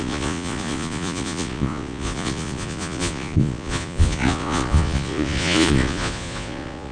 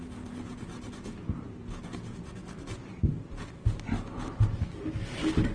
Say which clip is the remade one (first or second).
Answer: first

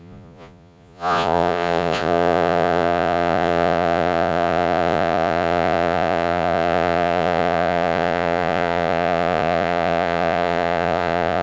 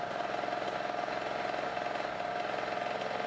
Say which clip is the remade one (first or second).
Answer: first